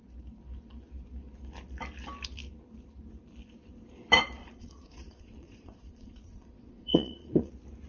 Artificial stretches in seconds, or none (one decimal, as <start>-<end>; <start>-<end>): 4.4-7.5